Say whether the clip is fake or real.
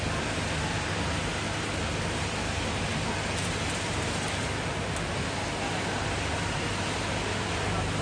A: real